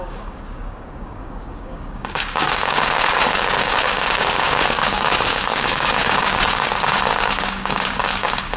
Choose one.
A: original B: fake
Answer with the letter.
B